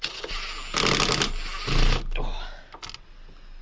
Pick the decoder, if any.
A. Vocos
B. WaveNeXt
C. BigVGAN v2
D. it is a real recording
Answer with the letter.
D